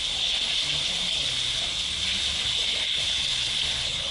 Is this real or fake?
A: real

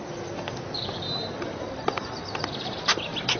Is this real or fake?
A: real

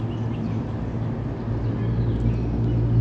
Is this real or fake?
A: real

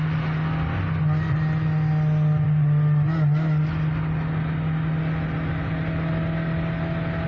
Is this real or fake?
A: real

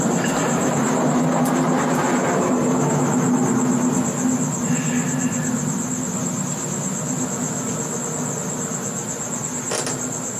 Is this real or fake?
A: real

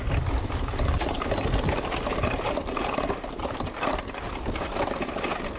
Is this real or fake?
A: real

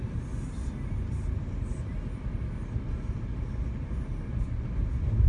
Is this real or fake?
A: real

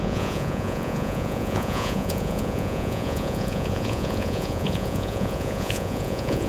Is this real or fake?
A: fake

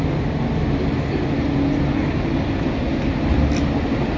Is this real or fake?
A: real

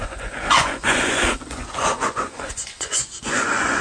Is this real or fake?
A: fake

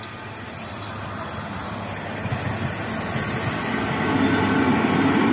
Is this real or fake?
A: real